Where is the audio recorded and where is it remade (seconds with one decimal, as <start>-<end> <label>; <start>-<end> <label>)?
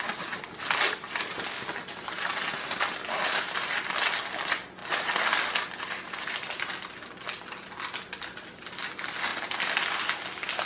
0.0-10.7 recorded